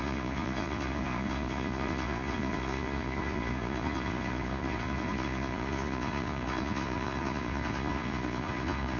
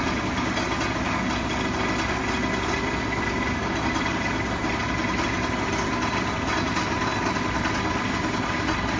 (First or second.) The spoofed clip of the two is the first